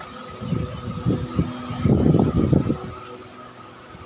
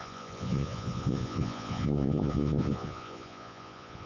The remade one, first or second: second